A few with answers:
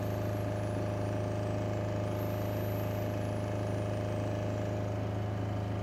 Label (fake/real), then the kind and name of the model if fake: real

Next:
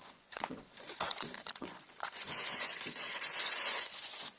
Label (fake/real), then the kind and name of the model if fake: fake, vocoder, Vocos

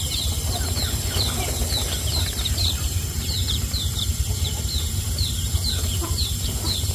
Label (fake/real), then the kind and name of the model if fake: fake, vocoder, BigVGAN v2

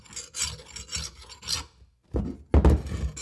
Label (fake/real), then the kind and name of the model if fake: real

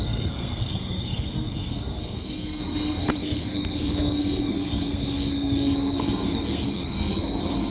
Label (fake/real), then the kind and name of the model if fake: fake, codec, SNAC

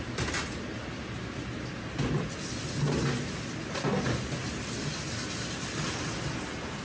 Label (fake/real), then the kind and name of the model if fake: real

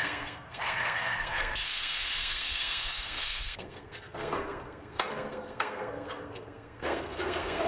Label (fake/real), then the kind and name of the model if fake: fake, codec, SNAC